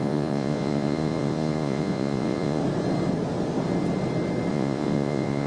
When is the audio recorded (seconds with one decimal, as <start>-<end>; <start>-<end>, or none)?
2.6-4.5